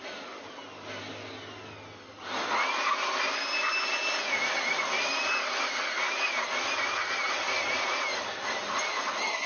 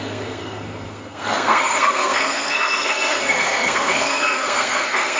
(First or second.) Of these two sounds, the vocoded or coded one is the second